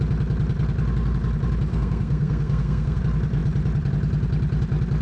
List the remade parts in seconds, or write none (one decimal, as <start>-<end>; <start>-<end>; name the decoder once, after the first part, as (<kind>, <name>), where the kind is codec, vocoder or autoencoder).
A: 1.7-3.0 (codec, SNAC)

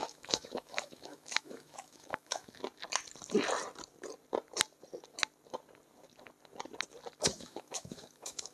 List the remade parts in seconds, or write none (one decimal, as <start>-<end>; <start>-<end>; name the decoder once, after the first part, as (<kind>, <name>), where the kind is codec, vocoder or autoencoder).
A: 0.0-2.6 (autoencoder, DAC-VAE); 7.2-8.5

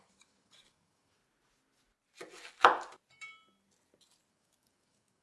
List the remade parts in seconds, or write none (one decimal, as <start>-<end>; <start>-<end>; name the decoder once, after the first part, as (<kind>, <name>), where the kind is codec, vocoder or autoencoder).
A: 0.0-1.2 (codec, DAC); 4.3-5.2

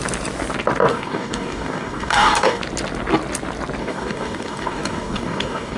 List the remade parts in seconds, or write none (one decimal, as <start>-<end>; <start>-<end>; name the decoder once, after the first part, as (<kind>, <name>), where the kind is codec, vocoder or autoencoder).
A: 0.9-2.6 (codec, DAC); 3.8-5.8

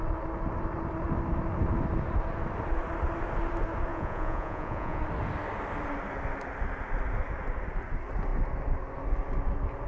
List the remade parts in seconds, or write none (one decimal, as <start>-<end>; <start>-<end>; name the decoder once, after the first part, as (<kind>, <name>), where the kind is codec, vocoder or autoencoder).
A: 3.9-5.0 (vocoder, Vocos)